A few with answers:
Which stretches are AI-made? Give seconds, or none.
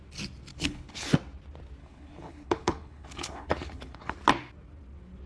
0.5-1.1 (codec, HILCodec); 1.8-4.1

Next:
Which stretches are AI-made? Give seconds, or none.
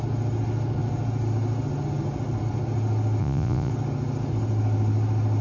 3.2-3.7 (vocoder, Vocos)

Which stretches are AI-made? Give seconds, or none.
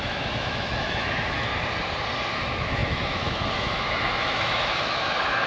0.0-1.5 (autoencoder, DAC-VAE); 2.3-5.5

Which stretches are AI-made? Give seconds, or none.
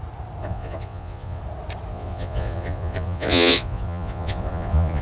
0.4-1.4 (vocoder, Vocos); 1.9-5.0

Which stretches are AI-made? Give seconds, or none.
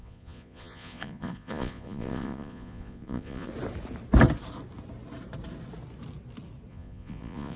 0.0-3.5 (vocoder, Vocos); 6.7-7.6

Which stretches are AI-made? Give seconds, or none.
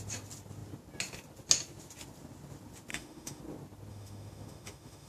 2.9-3.4 (autoencoder, DAC-VAE); 3.9-5.1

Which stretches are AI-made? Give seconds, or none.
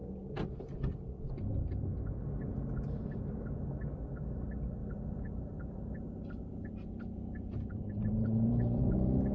0.0-1.3 (vocoder, BigVGAN v2); 4.8-8.8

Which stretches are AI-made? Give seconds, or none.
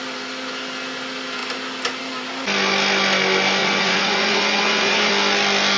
3.6-5.1 (vocoder, Vocos)